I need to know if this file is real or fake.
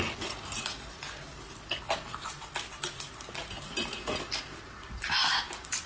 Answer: real